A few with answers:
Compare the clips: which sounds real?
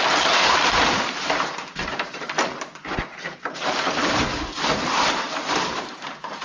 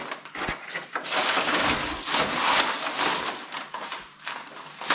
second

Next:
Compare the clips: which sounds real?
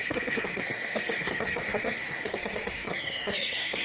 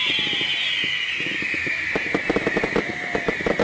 second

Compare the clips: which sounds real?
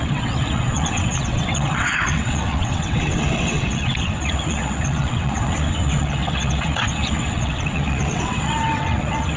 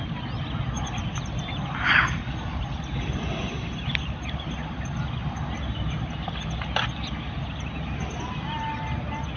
second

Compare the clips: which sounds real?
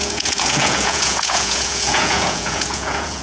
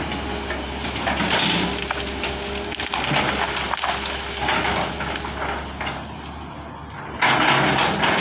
second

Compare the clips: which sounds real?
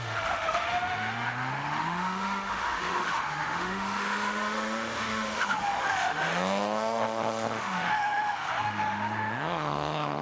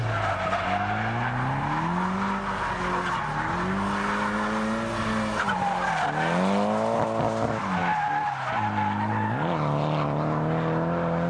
second